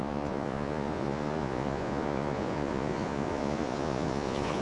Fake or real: fake